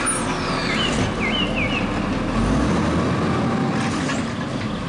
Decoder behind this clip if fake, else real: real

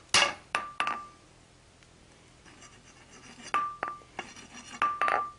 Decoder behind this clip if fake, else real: real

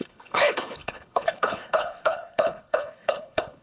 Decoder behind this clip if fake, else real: fake, codec, HILCodec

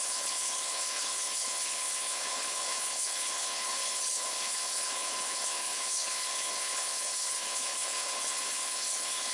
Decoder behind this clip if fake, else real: fake, codec, HILCodec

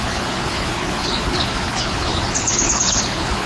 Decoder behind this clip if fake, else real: fake, codec, HILCodec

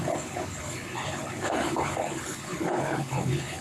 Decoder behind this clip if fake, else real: fake, codec, HILCodec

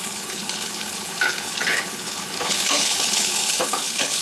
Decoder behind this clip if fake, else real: fake, codec, HILCodec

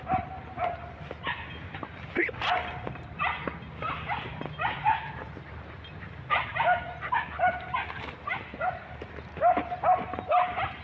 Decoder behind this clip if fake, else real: real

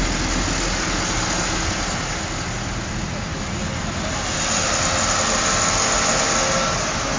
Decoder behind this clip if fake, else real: real